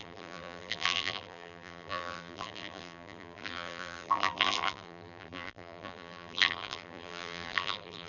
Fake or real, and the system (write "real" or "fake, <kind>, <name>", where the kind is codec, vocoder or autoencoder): fake, vocoder, BigVGAN v2